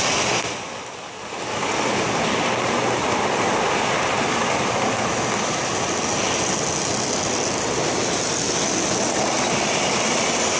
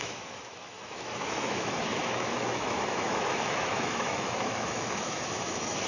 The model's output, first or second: second